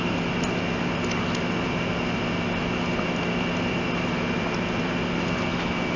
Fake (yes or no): no